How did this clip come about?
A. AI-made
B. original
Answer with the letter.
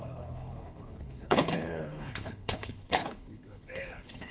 A